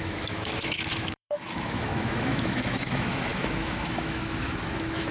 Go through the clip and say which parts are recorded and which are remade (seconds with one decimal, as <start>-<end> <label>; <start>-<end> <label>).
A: 0.0-5.1 remade